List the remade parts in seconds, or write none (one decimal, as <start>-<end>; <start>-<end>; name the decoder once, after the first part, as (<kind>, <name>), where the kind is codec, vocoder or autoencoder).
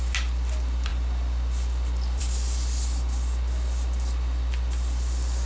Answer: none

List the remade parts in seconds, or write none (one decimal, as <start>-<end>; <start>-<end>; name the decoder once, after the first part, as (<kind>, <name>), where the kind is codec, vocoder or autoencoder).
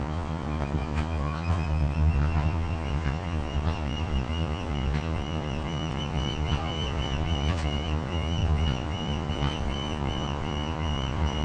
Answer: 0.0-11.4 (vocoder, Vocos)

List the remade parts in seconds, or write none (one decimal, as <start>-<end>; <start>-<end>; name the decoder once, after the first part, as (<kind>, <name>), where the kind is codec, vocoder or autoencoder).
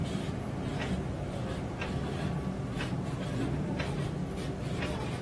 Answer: 1.9-2.7 (vocoder, BigVGAN v2); 3.6-4.2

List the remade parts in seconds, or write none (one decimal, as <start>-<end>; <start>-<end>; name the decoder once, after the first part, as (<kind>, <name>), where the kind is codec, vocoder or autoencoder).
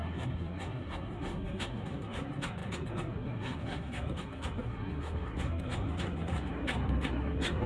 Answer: 0.0-7.7 (codec, SNAC)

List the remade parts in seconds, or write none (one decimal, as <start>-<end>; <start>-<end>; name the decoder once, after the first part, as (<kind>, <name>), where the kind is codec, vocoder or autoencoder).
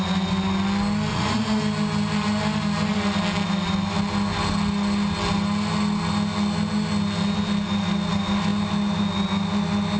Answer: 1.1-1.6 (vocoder, Vocos)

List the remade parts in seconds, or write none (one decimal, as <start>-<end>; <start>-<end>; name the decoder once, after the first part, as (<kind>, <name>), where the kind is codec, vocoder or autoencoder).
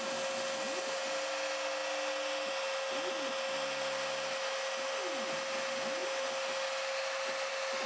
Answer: none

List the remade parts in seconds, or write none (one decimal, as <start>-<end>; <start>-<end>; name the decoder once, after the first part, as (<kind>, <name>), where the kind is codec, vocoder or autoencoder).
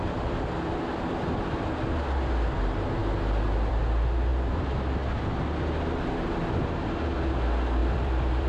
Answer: 7.8-8.5 (vocoder, BigVGAN v2)